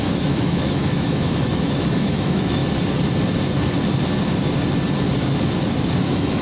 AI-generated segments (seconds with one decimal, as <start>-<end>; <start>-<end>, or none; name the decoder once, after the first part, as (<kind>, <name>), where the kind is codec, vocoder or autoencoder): 0.0-2.6 (autoencoder, DAC-VAE); 6.0-6.4